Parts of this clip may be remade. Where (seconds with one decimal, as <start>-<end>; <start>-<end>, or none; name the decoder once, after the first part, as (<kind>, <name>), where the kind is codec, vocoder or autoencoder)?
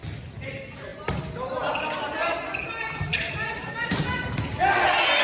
none